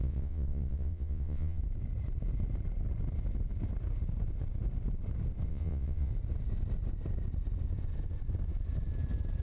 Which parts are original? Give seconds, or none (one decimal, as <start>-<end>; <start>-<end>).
1.6-5.5; 6.1-9.4